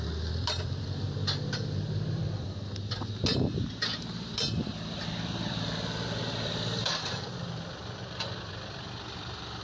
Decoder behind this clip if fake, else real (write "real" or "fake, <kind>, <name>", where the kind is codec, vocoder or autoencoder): fake, vocoder, BigVGAN v2